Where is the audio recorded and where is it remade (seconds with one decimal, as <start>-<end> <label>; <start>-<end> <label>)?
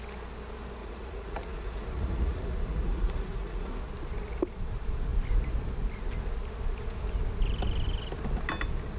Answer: 0.0-0.8 recorded; 0.8-3.8 remade; 3.8-9.0 recorded